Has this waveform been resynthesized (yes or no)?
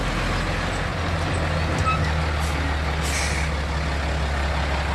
no